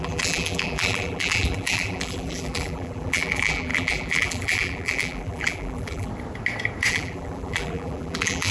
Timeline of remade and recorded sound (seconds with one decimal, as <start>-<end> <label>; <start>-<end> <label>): 0.0-6.1 remade; 6.1-6.9 recorded; 6.9-8.5 remade